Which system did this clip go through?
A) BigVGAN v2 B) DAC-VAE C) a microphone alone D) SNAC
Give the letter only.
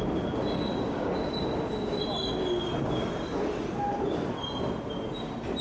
C